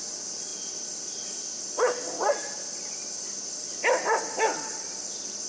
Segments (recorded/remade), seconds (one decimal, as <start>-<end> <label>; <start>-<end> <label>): 0.0-5.5 recorded